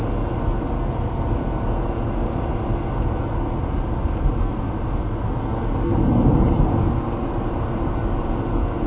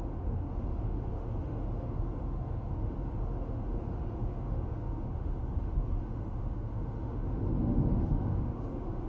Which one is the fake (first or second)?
second